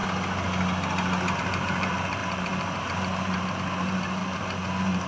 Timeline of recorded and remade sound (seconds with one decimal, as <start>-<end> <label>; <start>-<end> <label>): 0.0-1.4 recorded; 1.4-5.1 remade